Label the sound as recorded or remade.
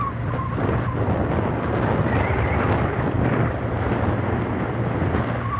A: recorded